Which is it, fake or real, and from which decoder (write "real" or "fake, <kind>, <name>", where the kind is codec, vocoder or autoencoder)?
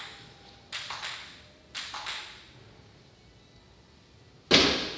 real